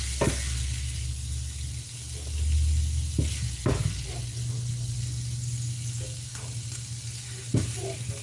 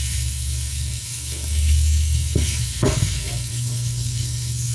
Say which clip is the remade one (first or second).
second